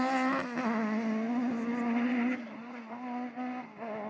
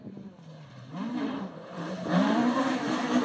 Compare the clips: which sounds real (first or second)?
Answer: first